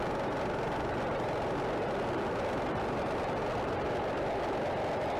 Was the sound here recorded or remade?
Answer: recorded